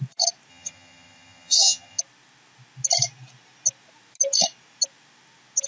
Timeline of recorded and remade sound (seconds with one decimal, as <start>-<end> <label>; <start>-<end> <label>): 0.0-0.5 recorded; 0.5-2.0 remade; 2.0-5.7 recorded